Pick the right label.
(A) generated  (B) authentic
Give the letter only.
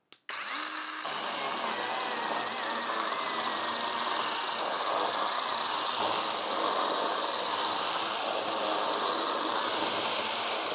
B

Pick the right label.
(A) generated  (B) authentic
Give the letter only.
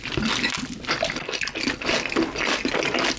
B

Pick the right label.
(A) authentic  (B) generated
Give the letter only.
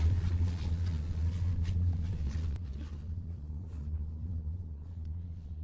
B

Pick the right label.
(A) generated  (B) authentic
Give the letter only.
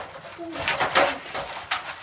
B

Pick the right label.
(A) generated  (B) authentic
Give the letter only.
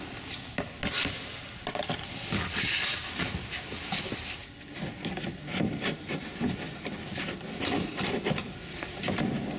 B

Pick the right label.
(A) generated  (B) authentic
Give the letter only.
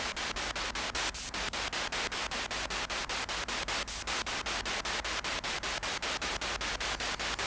B